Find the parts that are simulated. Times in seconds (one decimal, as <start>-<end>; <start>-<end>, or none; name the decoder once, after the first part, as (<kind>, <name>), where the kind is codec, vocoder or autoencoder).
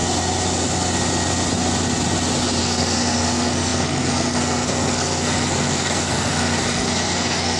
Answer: 2.6-7.6 (codec, SNAC)